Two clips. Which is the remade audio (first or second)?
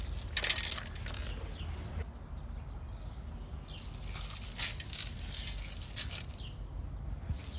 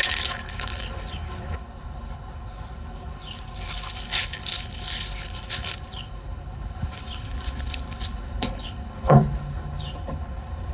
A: second